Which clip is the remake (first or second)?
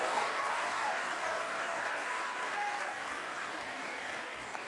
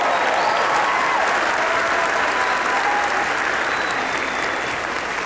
first